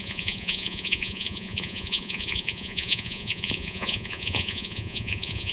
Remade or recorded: remade